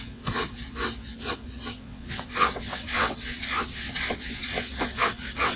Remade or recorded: remade